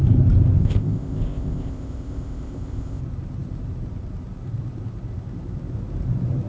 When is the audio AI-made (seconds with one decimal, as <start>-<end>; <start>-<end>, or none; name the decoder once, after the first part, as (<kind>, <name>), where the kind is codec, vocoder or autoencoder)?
0.6-3.0 (codec, ZipCodec)